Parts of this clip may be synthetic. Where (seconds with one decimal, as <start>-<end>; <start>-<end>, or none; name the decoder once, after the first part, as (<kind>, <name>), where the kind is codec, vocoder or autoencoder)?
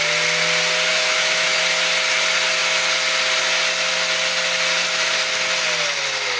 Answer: 0.9-1.6 (autoencoder, DAC-VAE)